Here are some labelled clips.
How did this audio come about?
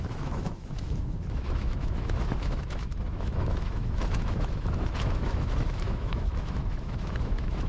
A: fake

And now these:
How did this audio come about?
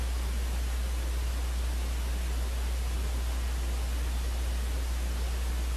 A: real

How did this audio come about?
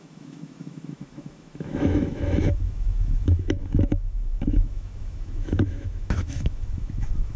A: fake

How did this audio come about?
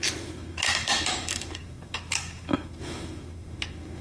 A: fake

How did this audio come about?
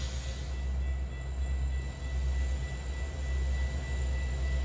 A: real